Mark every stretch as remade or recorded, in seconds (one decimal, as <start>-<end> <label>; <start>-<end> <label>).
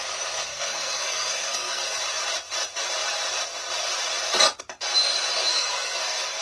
0.0-0.5 recorded; 0.5-2.0 remade; 2.0-5.5 recorded; 5.5-6.4 remade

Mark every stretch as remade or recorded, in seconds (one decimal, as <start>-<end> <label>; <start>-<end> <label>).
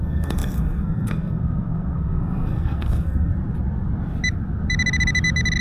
0.0-3.3 remade; 3.3-5.6 recorded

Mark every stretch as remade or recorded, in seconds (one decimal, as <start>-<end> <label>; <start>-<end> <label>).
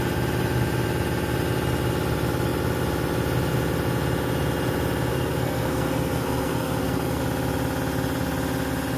0.0-5.1 recorded; 5.1-7.2 remade; 7.2-9.0 recorded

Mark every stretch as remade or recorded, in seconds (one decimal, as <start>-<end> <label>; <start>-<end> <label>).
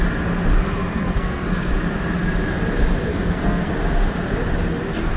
0.0-0.9 recorded; 0.9-1.7 remade; 1.7-3.1 recorded; 3.1-3.7 remade; 3.7-5.2 recorded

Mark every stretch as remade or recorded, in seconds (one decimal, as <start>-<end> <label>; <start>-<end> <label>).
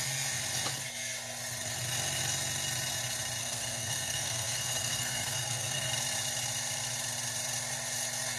0.0-3.4 recorded; 3.4-5.8 remade; 5.8-8.4 recorded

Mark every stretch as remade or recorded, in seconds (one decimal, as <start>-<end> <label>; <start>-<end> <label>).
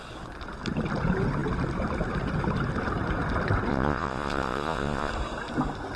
0.0-3.7 recorded; 3.7-5.1 remade; 5.1-6.0 recorded